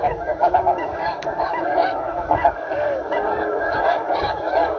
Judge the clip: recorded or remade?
remade